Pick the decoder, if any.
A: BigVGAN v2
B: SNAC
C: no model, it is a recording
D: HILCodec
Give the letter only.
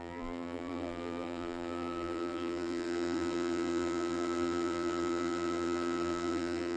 A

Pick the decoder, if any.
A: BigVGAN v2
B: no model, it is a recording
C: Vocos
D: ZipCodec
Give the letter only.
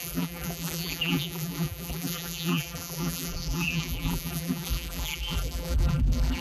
A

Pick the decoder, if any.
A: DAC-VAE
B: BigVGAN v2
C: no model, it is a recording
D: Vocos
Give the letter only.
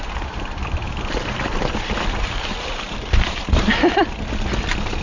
B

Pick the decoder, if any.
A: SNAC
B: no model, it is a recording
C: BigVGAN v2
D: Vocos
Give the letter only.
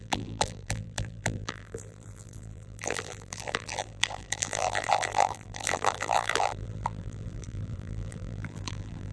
C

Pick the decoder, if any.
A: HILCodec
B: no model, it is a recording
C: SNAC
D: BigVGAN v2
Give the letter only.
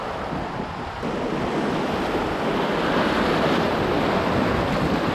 B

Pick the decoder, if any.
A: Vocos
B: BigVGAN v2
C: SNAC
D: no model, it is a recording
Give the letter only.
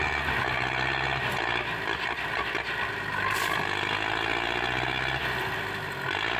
D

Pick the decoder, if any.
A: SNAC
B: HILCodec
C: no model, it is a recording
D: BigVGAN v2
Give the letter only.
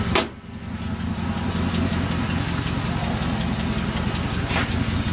C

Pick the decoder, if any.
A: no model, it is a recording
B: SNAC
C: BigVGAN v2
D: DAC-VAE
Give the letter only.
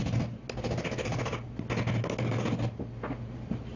A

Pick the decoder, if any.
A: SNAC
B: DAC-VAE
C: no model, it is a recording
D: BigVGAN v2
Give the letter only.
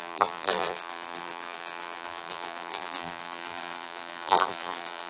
D